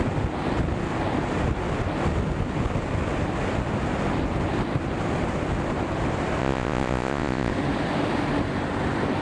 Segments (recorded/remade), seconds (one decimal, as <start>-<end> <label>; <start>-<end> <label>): 0.0-6.4 recorded; 6.4-7.5 remade; 7.5-9.2 recorded